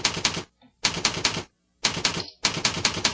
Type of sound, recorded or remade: recorded